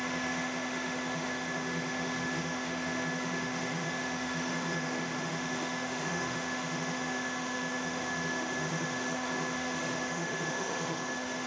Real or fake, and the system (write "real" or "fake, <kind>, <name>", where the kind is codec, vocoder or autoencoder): fake, autoencoder, DAC-VAE